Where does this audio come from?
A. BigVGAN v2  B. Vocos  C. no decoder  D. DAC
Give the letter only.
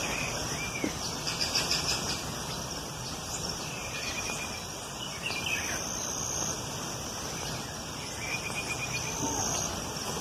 A